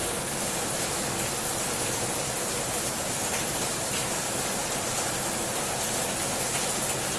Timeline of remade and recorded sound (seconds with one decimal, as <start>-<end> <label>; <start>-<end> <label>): 0.0-7.2 recorded